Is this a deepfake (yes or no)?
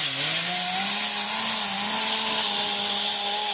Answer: no